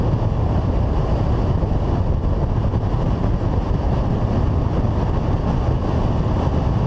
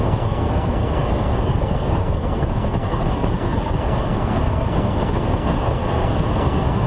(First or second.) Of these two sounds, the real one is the first